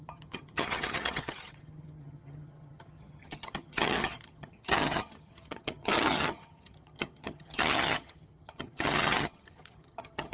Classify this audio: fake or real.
fake